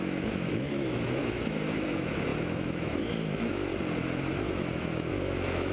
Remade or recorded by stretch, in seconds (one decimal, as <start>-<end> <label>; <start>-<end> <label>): 0.0-3.7 remade; 3.7-4.4 recorded; 4.4-5.7 remade